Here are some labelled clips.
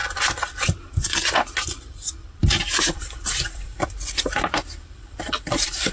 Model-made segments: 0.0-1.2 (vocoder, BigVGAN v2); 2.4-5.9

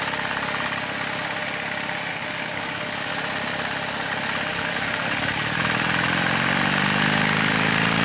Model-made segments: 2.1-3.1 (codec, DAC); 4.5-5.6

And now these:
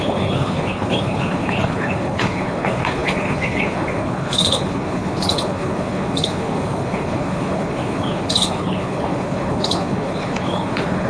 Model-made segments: 0.0-11.1 (codec, HILCodec)

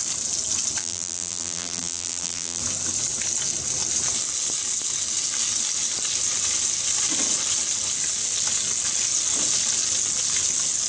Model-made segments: 0.8-2.6 (vocoder, BigVGAN v2)

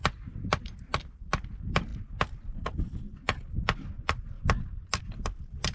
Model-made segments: none

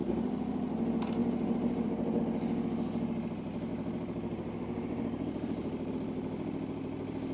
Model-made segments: 1.2-2.2 (vocoder, BigVGAN v2); 3.7-5.9

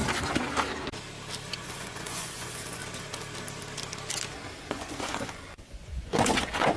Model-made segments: 1.5-2.8 (vocoder, Vocos); 4.6-6.8